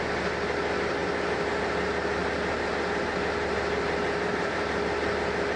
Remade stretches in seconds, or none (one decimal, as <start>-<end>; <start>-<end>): none